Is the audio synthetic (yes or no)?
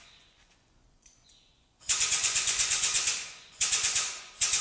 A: yes